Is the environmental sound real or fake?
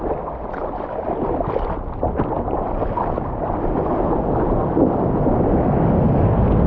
real